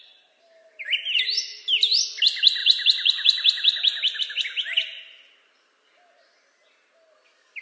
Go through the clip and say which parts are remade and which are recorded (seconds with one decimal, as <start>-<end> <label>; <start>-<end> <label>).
0.0-2.6 recorded; 2.6-4.2 remade; 4.2-7.6 recorded